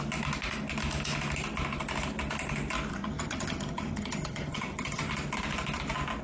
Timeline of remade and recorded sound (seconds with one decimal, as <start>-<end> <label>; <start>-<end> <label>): 0.0-2.9 recorded; 2.9-5.1 remade; 5.1-6.2 recorded